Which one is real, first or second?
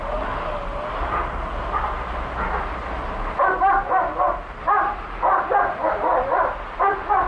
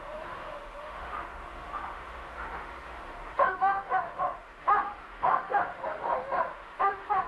first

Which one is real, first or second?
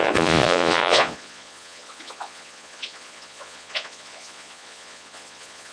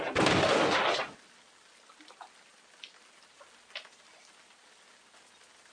second